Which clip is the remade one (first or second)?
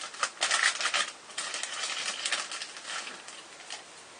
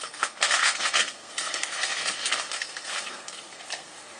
second